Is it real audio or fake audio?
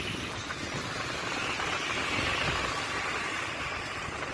real